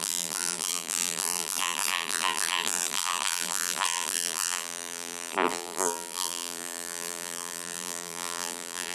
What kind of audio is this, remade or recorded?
remade